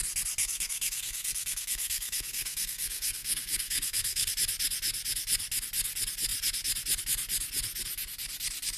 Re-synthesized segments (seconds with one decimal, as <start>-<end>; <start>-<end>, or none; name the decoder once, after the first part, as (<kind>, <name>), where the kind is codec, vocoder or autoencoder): 0.4-4.3 (codec, SNAC)